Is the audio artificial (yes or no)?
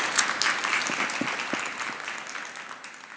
no